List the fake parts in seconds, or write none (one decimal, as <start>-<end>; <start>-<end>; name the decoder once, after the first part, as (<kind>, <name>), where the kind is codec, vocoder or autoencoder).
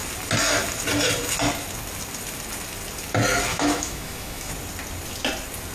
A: 3.5-4.5 (autoencoder, DAC-VAE)